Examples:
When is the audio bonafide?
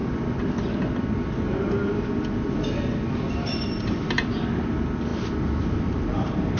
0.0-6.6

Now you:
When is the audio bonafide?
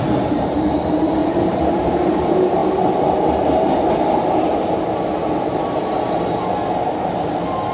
2.6-7.2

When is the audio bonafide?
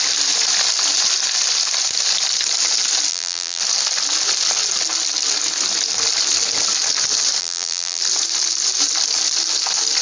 0.0-3.1; 3.6-7.4; 8.0-10.0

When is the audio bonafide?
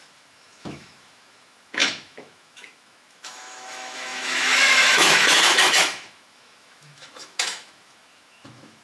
none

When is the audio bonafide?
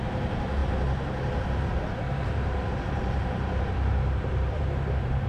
none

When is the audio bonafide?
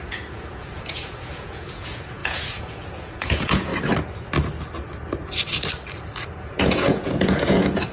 3.7-6.3